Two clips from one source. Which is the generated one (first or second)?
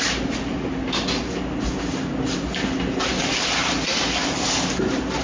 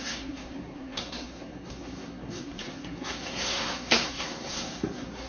second